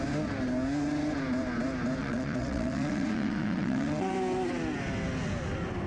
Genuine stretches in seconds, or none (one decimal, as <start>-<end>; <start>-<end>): 0.0-2.0; 4.1-5.9